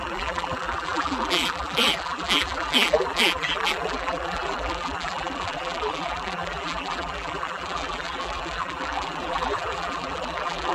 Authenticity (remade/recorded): remade